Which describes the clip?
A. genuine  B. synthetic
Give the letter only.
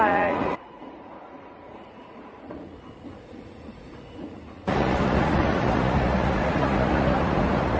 B